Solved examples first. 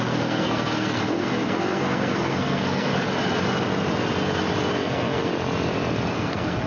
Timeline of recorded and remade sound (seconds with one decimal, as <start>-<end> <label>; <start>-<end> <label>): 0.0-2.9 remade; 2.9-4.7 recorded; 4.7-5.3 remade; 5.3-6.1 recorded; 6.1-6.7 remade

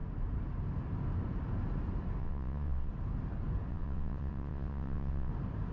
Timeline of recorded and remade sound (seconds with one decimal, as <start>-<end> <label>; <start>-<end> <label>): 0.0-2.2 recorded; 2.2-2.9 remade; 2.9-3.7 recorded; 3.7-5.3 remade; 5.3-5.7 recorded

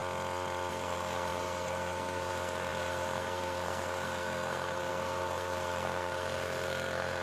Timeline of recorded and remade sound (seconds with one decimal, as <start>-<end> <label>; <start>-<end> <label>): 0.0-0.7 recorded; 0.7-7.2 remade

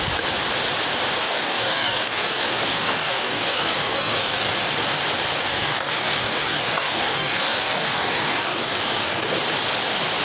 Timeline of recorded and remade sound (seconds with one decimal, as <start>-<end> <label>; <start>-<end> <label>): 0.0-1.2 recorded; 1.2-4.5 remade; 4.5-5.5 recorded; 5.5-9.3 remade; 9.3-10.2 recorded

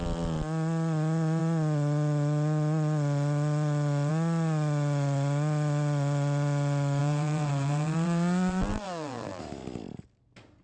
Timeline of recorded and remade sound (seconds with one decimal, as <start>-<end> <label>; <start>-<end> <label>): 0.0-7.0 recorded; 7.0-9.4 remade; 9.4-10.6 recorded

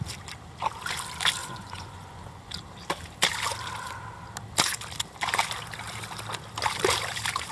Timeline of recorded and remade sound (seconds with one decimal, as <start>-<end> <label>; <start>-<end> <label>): 0.0-1.4 recorded; 1.4-2.5 remade; 2.5-7.5 recorded

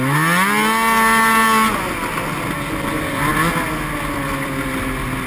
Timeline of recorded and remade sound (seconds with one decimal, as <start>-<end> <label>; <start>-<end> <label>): 0.0-5.3 recorded